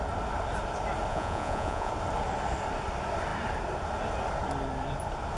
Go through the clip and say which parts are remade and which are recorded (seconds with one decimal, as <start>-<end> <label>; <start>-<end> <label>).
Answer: 0.0-1.1 recorded; 1.1-1.9 remade; 1.9-5.4 recorded